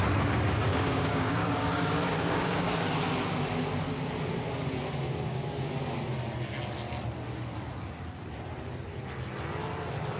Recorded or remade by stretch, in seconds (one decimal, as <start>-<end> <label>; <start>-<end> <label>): 0.0-0.7 recorded; 0.7-2.7 remade; 2.7-10.2 recorded